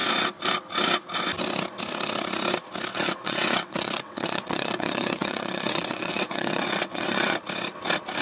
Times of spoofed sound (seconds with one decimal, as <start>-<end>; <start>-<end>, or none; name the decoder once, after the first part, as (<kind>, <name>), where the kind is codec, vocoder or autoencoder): 2.9-7.4 (vocoder, WaveNeXt)